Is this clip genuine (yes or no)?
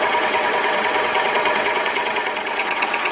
no